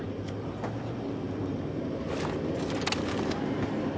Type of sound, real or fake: real